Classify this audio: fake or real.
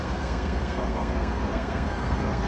fake